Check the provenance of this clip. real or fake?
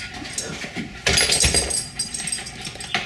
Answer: real